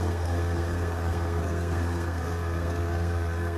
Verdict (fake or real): fake